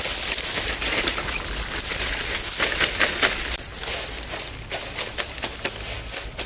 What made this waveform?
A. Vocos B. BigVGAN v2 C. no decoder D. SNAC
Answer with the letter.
C